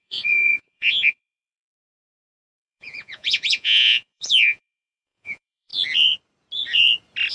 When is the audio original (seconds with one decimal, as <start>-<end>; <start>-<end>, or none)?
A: 5.7-7.3